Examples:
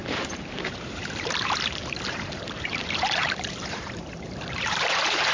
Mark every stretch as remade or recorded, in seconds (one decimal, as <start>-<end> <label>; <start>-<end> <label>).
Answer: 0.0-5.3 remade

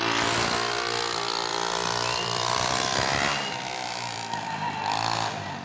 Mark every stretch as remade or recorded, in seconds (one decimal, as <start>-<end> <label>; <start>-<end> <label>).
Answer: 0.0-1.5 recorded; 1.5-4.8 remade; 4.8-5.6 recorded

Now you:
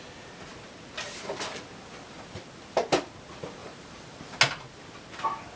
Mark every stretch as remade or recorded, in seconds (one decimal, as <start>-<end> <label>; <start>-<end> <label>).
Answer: 0.0-3.6 recorded; 3.6-4.2 remade; 4.2-5.6 recorded